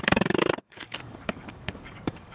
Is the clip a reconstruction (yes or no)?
yes